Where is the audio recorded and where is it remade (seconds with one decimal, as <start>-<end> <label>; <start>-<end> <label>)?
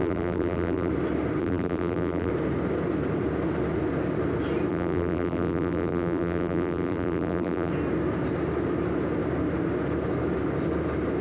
0.0-0.9 remade; 0.9-1.4 recorded; 1.4-2.3 remade; 2.3-4.7 recorded; 4.7-7.7 remade; 7.7-11.2 recorded